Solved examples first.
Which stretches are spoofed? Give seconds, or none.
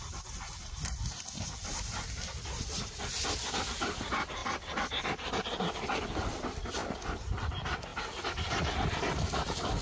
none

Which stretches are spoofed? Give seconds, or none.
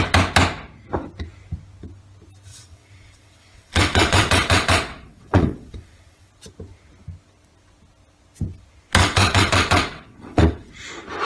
2.5-6.3 (vocoder, WaveNeXt); 9.0-10.7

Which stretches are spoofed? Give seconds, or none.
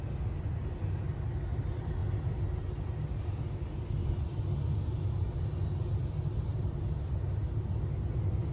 none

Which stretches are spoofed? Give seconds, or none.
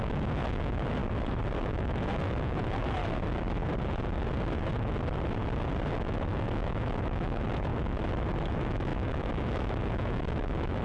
0.0-1.0 (autoencoder, DAC-VAE); 1.6-3.0; 5.9-7.7; 8.5-10.8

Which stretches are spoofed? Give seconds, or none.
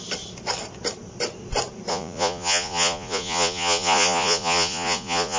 1.9-5.4 (vocoder, Vocos)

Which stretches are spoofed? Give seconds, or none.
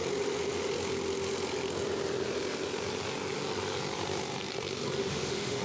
5.0-5.6 (autoencoder, DAC-VAE)